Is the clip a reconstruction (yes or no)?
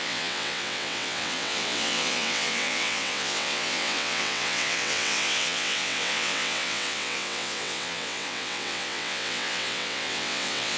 yes